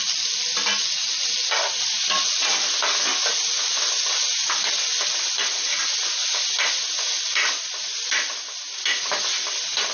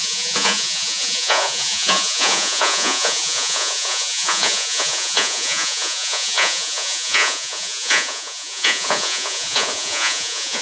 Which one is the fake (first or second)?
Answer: second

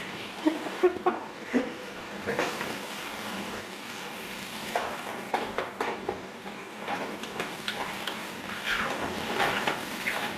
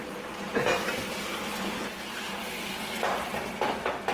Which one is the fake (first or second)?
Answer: first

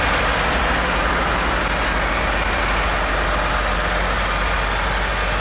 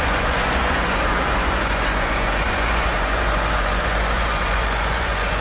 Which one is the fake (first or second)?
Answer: second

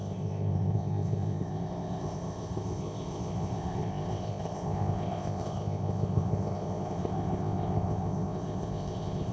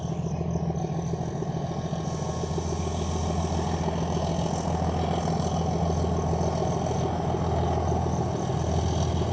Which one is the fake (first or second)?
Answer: first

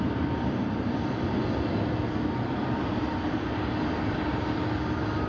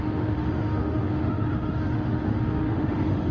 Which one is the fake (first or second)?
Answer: second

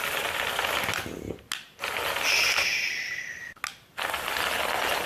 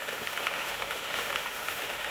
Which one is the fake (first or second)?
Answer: second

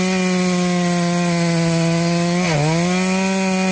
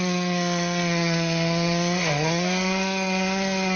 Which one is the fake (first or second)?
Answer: second